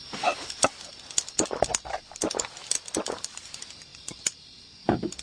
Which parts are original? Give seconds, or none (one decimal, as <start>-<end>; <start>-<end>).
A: 0.0-3.9; 4.6-5.2